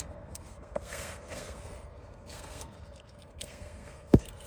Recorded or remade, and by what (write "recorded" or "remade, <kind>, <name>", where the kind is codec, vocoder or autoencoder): remade, codec, SNAC